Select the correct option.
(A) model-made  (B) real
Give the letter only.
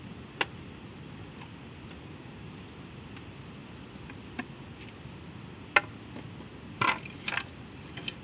B